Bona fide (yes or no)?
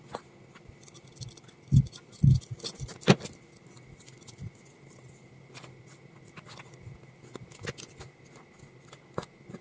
yes